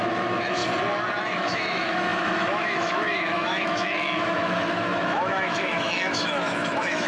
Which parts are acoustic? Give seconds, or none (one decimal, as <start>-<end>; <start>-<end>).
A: 0.6-1.2